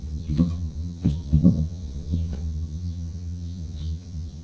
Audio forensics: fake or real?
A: fake